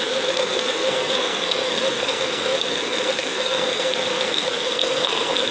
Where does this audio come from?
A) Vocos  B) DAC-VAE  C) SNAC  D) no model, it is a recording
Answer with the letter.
C